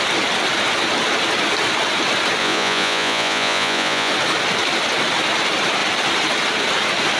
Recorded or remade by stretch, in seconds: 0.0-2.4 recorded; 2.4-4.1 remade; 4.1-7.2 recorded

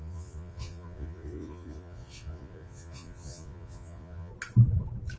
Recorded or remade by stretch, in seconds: 0.0-4.3 remade; 4.3-5.2 recorded